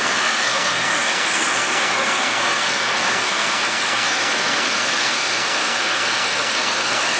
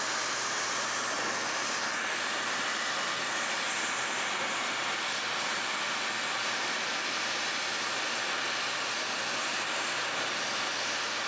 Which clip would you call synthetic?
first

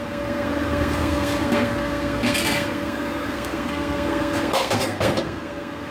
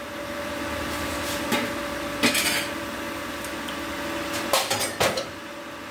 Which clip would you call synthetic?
first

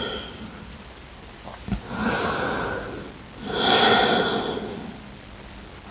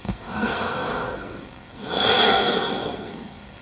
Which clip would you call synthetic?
second